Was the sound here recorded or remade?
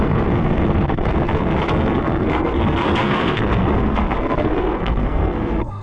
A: remade